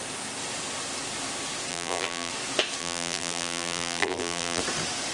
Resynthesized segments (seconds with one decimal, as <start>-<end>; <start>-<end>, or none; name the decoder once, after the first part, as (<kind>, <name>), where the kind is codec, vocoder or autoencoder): 1.7-2.3 (vocoder, BigVGAN v2); 2.8-4.6